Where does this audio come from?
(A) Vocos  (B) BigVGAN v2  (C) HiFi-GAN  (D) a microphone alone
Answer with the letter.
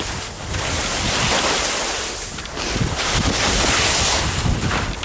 D